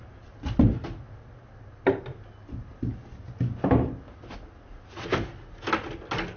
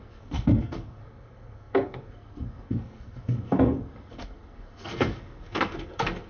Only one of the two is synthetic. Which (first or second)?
second